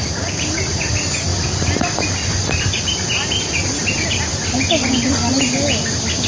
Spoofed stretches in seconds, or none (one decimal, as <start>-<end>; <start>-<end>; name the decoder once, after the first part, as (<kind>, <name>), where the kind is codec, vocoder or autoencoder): none